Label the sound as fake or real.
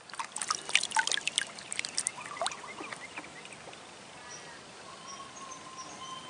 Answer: real